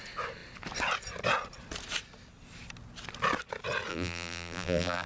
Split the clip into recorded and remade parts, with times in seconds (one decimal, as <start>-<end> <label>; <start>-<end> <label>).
0.0-3.9 recorded; 3.9-5.1 remade